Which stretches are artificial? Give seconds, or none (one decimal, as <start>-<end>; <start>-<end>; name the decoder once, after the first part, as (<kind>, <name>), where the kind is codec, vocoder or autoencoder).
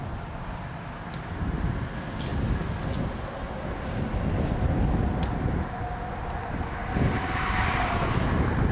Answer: none